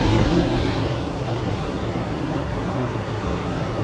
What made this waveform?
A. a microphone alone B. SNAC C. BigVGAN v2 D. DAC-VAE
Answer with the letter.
B